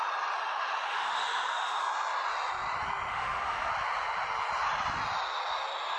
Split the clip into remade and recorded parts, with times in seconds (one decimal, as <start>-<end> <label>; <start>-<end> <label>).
0.0-0.5 recorded; 0.5-1.8 remade; 1.8-3.1 recorded; 3.1-3.7 remade; 3.7-6.0 recorded